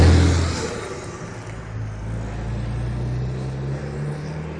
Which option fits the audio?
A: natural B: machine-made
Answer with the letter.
A